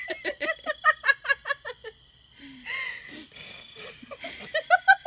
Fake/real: real